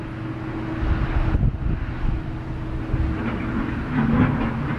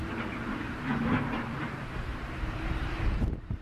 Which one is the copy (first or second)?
second